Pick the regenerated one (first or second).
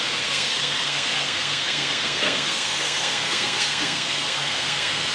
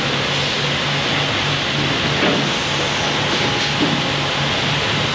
first